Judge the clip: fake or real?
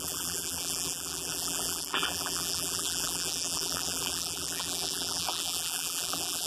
fake